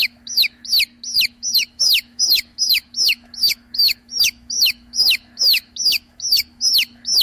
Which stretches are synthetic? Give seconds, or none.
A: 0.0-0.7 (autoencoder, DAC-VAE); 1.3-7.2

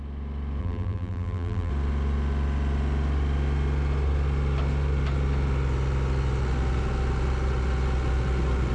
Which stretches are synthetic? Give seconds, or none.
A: 0.6-1.7 (vocoder, BigVGAN v2)

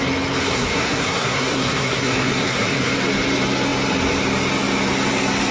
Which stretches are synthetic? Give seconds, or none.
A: 0.4-2.9 (codec, SNAC)

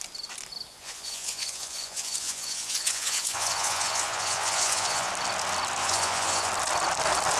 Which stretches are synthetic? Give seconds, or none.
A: 0.7-5.1 (vocoder, Vocos); 5.8-6.5